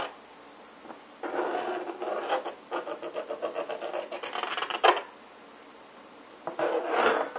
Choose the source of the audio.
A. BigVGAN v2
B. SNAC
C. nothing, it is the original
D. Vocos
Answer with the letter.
C